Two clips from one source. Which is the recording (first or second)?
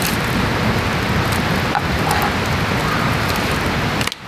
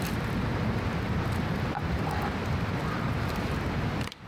first